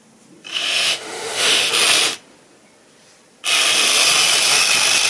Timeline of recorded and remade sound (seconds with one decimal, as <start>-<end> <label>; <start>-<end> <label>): 0.0-0.5 recorded; 0.5-1.7 remade; 1.7-5.1 recorded